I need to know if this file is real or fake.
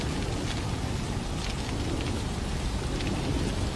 real